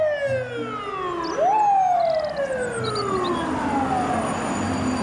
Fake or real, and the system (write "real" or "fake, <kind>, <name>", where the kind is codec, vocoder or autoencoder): real